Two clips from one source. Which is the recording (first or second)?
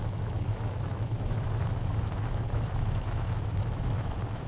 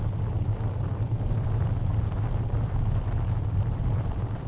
second